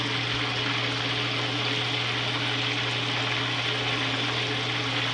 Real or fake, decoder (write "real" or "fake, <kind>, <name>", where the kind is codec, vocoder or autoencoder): real